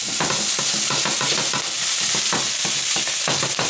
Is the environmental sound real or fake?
real